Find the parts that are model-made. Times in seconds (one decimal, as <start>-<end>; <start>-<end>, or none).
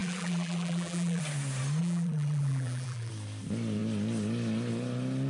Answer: 0.0-1.2; 1.8-3.1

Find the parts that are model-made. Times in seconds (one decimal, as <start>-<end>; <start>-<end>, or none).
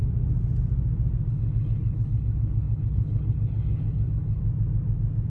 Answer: 1.3-4.4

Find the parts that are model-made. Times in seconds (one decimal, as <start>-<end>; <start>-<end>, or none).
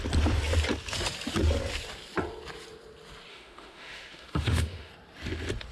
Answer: 3.3-4.9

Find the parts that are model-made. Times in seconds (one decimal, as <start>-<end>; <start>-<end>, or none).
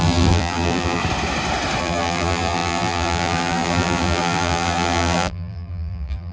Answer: 0.0-1.0; 1.8-6.3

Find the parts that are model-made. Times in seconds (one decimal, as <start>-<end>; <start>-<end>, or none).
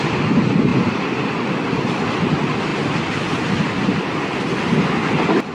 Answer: 2.7-4.4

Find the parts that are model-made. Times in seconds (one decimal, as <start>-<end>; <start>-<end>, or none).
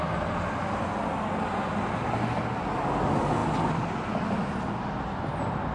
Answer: none